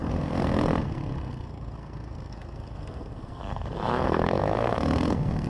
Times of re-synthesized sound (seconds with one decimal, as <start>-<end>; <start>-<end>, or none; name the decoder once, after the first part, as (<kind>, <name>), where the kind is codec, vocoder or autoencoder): 0.0-5.5 (codec, SNAC)